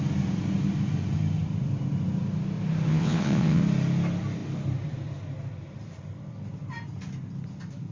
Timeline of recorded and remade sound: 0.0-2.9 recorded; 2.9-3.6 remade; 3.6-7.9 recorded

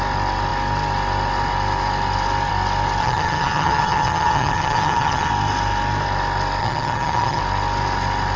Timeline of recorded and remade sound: 0.0-3.0 recorded; 3.0-5.3 remade; 5.3-6.6 recorded; 6.6-7.4 remade; 7.4-8.4 recorded

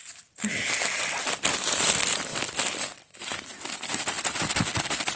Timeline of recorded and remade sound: 0.0-5.2 recorded

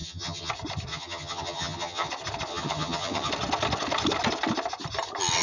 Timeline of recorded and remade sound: 0.0-0.5 remade; 0.5-0.9 recorded; 0.9-2.1 remade; 2.1-2.5 recorded; 2.5-3.3 remade; 3.3-5.4 recorded

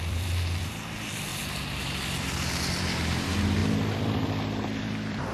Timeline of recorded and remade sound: 0.0-5.3 remade

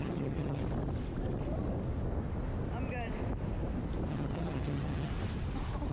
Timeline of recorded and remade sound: 0.0-0.6 remade; 0.6-4.1 recorded; 4.1-5.1 remade; 5.1-5.9 recorded